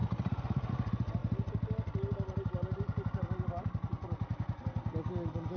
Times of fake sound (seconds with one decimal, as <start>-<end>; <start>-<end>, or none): none